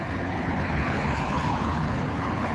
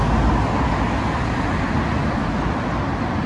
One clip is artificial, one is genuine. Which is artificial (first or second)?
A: first